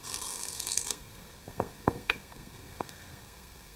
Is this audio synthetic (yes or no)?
yes